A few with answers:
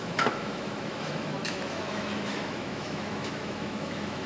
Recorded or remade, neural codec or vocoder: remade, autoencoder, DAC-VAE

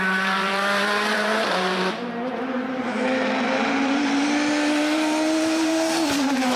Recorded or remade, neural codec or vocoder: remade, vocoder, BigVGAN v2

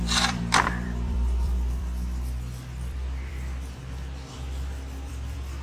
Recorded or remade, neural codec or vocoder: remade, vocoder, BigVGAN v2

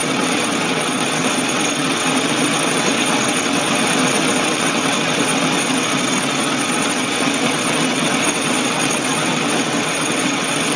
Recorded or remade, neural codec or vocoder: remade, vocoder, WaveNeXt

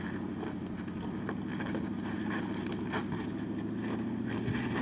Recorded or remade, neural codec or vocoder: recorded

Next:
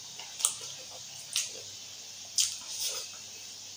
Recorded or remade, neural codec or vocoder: recorded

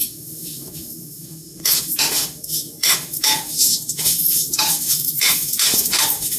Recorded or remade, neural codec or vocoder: remade, autoencoder, DAC-VAE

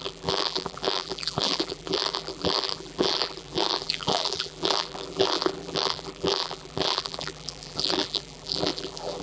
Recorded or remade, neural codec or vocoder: remade, vocoder, BigVGAN v2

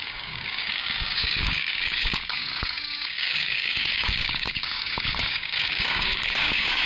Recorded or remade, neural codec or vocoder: remade, codec, DAC